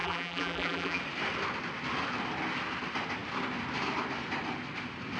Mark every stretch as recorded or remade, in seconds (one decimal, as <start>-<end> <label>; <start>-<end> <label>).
0.0-1.0 remade; 1.0-5.2 recorded